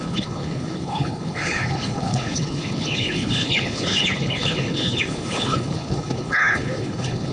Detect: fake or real fake